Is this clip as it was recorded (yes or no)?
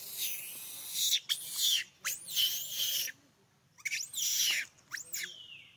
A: yes